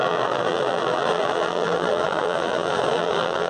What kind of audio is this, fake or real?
fake